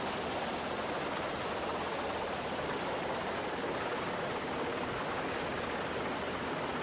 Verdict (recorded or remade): recorded